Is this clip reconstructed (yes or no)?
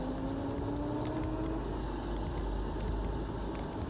no